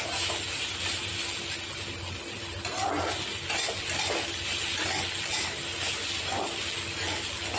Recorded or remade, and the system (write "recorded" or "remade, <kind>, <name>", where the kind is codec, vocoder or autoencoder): recorded